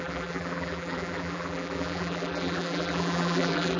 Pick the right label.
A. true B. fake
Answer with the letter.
B